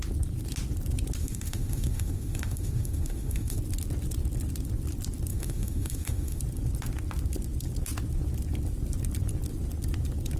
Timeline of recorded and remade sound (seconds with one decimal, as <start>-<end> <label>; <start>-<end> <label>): 0.0-1.2 recorded; 1.2-3.6 remade; 3.6-5.3 recorded; 5.3-6.4 remade; 6.4-10.4 recorded